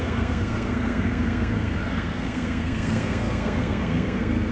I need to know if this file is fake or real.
fake